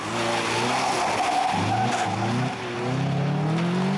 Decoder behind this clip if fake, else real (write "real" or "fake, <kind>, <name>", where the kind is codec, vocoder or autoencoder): real